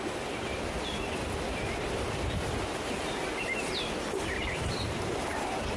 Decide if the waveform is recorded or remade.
recorded